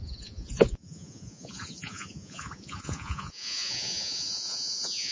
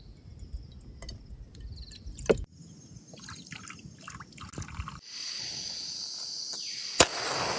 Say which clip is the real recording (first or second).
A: second